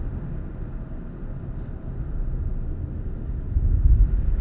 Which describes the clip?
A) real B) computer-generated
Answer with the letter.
A